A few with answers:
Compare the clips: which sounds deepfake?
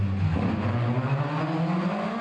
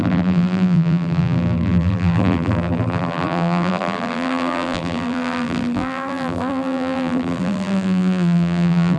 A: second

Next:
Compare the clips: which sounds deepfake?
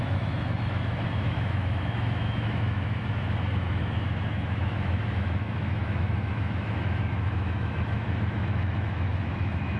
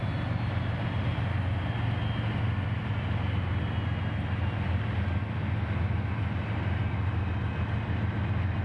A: first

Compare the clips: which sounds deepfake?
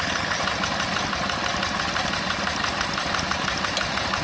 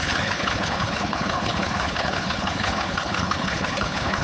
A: second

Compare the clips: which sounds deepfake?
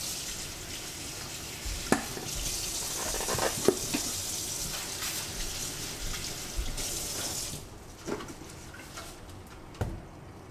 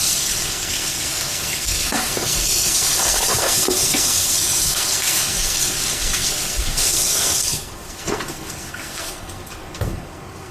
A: second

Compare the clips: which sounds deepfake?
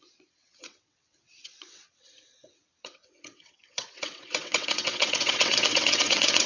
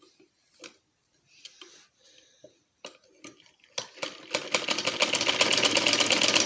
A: first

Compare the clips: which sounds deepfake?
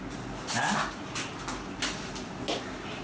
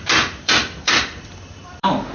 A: second